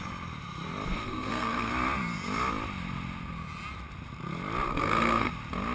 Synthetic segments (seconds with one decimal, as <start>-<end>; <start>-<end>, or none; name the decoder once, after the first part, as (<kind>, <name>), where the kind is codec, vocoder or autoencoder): 0.9-1.7 (codec, SNAC); 4.7-5.3